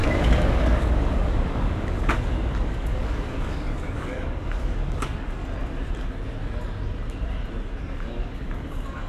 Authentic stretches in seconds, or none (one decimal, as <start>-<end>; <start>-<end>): 5.4-7.8